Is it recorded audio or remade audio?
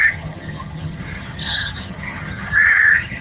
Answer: remade